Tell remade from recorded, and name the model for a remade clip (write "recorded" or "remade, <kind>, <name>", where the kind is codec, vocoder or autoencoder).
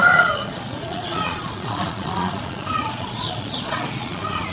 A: remade, vocoder, Vocos